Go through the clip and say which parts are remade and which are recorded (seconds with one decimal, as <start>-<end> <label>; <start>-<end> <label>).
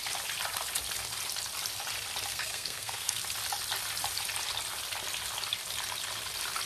0.0-2.3 recorded; 2.3-3.2 remade; 3.2-6.7 recorded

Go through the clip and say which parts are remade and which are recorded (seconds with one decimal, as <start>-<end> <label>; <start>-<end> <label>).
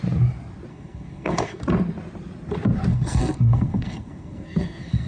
0.0-0.7 recorded; 0.7-1.6 remade; 1.6-2.9 recorded; 2.9-5.1 remade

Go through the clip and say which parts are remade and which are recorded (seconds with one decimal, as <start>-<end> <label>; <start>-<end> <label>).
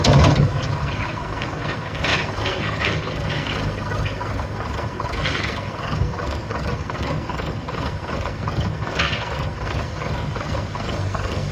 0.0-11.5 remade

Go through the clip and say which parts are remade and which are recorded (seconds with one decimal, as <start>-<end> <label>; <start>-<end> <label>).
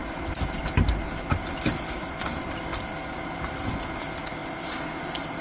0.0-5.4 recorded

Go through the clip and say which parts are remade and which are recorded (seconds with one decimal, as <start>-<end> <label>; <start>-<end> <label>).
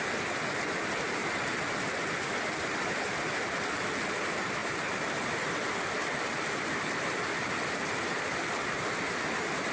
0.0-9.7 recorded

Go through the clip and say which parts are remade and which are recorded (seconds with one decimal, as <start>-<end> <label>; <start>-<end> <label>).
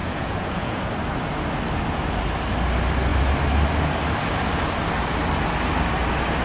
0.0-0.8 remade; 0.8-6.4 recorded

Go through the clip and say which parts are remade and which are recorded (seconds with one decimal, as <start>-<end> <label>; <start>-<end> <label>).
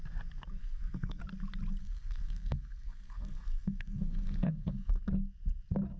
0.0-0.6 recorded; 0.6-1.2 remade; 1.2-1.8 recorded; 1.8-5.0 remade; 5.0-6.0 recorded